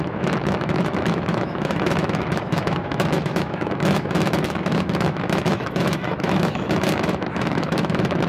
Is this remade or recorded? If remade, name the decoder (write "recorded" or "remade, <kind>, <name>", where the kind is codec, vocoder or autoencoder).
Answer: remade, autoencoder, DAC-VAE